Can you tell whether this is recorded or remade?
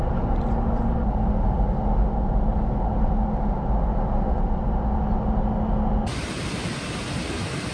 recorded